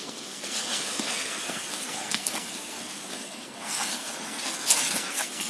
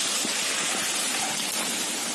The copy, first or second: first